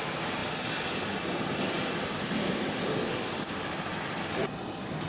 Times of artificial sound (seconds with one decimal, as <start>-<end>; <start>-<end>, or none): none